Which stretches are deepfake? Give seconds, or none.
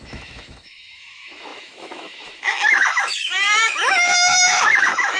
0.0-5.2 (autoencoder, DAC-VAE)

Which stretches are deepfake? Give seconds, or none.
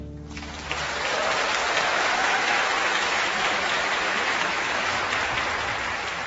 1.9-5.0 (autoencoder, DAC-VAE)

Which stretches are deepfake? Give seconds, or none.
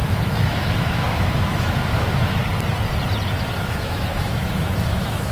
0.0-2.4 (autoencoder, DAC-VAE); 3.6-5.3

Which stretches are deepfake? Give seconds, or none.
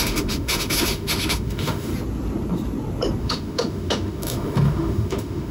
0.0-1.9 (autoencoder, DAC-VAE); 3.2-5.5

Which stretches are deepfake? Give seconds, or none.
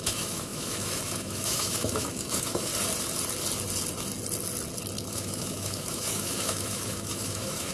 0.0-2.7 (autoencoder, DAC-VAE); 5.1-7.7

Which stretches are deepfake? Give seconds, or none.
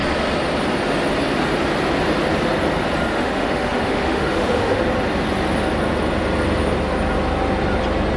3.1-4.8 (autoencoder, DAC-VAE)